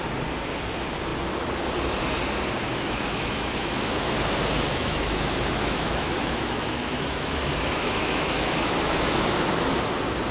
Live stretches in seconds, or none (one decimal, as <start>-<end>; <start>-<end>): 0.0-2.7; 4.1-4.7; 9.5-10.3